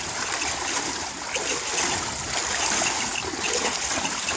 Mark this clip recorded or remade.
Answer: recorded